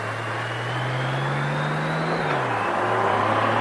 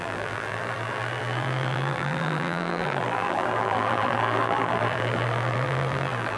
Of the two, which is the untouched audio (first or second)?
first